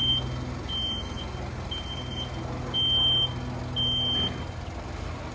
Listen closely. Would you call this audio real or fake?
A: real